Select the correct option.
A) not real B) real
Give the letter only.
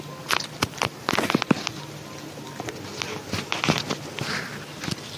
B